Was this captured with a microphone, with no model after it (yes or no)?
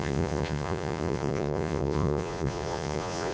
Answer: no